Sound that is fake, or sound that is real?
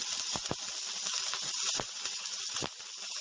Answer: real